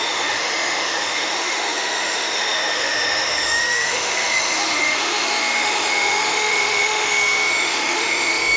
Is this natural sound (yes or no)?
no